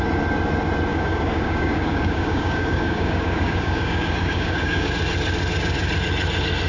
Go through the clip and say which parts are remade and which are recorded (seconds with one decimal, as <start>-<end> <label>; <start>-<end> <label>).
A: 0.0-0.9 recorded; 0.9-4.9 remade; 4.9-6.7 recorded